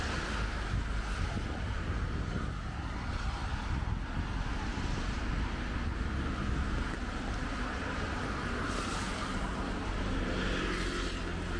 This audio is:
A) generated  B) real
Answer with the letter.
B